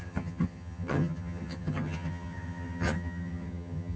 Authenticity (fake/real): fake